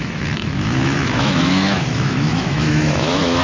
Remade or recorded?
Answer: remade